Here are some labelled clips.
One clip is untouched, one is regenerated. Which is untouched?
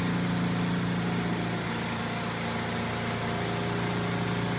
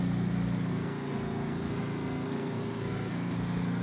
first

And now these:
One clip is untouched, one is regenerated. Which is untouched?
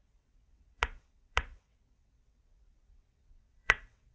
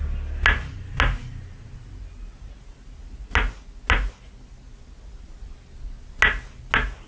second